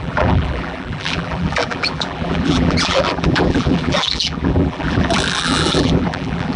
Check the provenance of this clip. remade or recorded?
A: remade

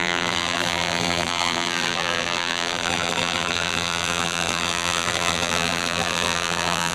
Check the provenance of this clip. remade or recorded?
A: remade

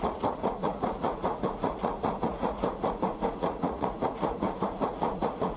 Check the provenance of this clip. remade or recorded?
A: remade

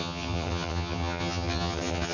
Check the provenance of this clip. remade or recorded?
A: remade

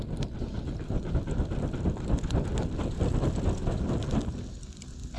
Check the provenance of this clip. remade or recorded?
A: recorded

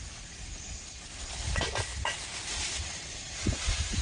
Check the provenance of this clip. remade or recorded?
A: recorded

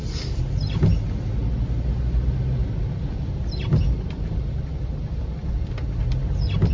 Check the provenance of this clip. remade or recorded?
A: recorded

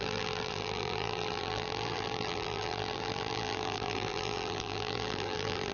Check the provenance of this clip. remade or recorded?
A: remade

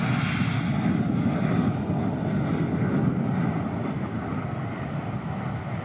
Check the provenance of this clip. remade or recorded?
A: recorded